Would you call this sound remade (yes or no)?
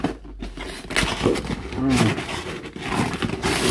no